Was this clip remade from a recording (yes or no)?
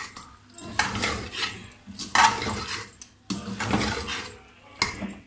no